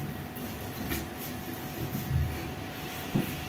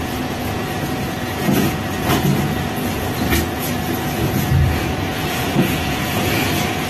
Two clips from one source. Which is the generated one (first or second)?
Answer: second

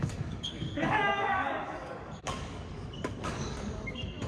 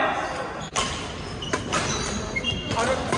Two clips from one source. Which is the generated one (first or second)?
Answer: first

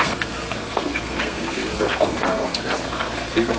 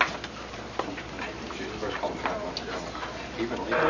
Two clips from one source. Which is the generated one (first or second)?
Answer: first